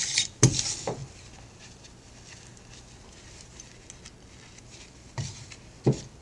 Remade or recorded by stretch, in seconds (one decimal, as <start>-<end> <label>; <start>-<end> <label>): 0.0-6.2 recorded